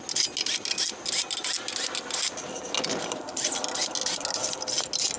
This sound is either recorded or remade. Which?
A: recorded